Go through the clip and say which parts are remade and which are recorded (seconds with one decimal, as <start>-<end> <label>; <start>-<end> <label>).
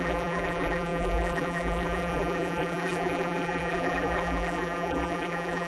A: 0.0-5.7 remade